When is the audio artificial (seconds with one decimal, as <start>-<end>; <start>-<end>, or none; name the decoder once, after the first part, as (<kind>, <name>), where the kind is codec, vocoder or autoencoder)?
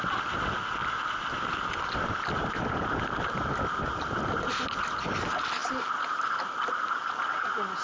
none